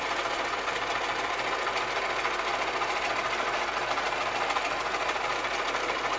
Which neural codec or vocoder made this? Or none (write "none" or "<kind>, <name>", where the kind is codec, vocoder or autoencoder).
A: none